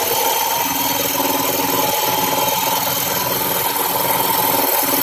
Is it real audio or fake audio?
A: real